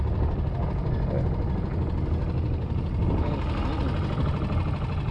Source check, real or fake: real